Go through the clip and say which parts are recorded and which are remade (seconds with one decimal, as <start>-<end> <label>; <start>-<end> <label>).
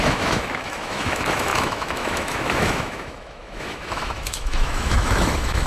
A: 0.0-5.7 remade